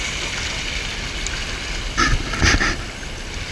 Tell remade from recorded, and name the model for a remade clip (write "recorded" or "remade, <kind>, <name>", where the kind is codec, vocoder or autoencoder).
recorded